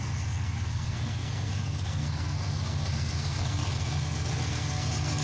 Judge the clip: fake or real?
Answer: fake